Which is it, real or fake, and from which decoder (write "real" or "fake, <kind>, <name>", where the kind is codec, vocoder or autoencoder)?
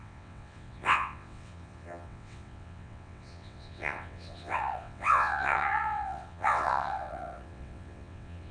fake, vocoder, WaveNeXt